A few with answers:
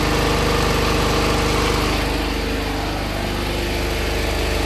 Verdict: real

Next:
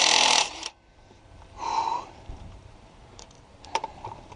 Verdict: fake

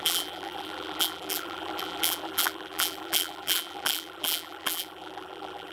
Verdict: fake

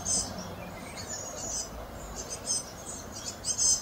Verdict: fake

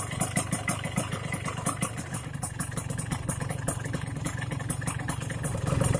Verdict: fake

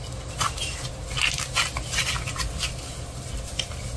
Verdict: real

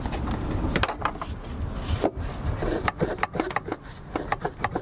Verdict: real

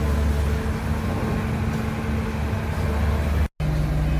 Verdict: real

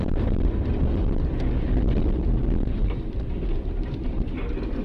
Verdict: fake